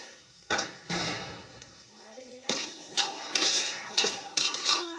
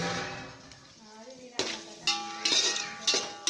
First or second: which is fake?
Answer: first